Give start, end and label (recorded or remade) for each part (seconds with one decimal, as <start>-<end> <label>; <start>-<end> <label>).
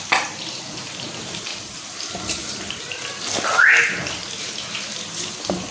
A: 0.0-5.7 recorded